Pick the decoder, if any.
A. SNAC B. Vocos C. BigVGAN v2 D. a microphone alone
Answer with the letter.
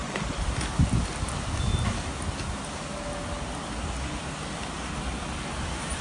D